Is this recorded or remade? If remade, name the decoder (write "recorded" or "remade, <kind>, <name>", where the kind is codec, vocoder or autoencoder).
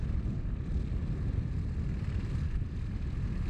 recorded